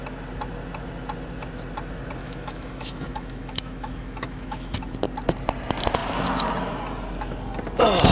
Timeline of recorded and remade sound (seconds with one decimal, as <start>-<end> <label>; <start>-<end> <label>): 0.0-2.2 recorded; 2.2-4.8 remade; 4.8-8.1 recorded